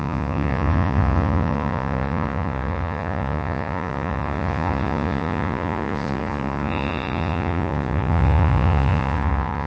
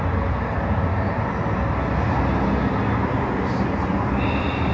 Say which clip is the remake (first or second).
first